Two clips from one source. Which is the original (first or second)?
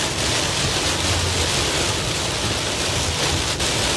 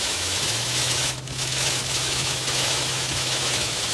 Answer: first